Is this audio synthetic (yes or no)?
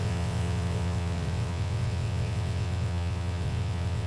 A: yes